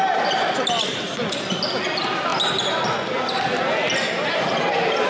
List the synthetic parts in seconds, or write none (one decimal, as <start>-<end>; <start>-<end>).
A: none